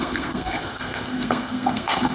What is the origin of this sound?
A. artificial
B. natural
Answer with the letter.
A